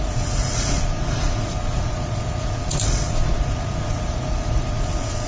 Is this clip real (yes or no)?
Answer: no